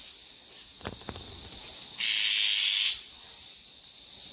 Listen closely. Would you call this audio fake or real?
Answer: real